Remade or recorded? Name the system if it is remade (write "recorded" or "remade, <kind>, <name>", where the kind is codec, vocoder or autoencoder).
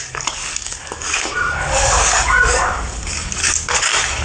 remade, codec, DAC